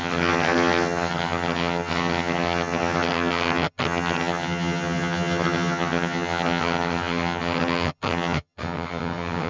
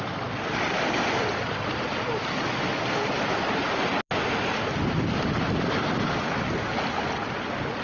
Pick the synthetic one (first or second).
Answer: first